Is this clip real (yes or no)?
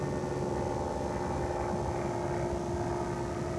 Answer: yes